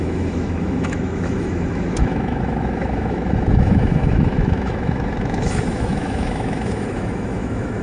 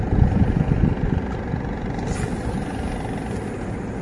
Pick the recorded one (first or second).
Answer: second